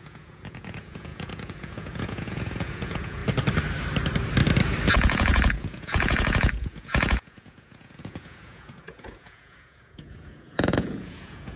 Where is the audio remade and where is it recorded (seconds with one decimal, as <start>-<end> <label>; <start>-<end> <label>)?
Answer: 0.0-3.2 remade; 3.2-4.9 recorded; 4.9-11.6 remade